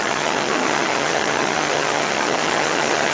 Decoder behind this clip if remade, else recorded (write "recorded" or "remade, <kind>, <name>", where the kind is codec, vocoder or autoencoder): remade, vocoder, HiFi-GAN